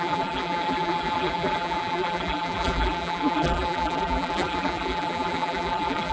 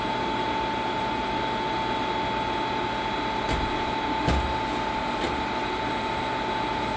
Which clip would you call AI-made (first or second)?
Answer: first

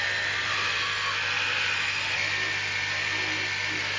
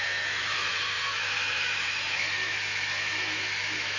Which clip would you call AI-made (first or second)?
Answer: second